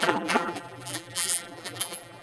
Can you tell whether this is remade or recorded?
remade